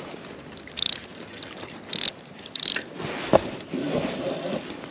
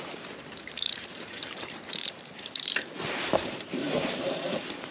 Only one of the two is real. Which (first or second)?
first